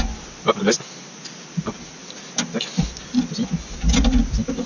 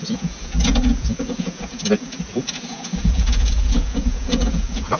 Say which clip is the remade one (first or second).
second